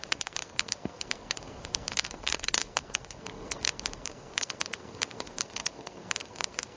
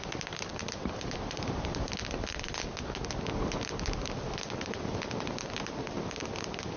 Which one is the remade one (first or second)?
first